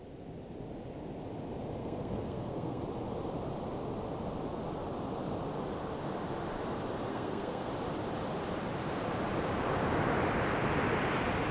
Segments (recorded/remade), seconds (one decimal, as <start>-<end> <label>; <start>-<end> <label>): 0.0-1.8 recorded; 1.8-2.8 remade; 2.8-7.1 recorded; 7.1-7.7 remade; 7.7-11.5 recorded